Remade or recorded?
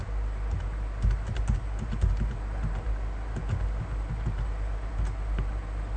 recorded